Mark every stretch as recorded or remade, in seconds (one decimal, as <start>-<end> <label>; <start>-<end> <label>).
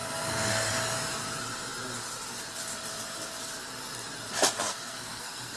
0.0-0.7 remade; 0.7-4.7 recorded; 4.7-5.6 remade